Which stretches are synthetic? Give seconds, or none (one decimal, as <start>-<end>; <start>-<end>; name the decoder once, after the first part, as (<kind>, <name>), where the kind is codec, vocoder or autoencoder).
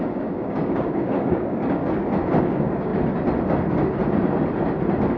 0.0-1.8 (codec, DAC); 2.4-2.9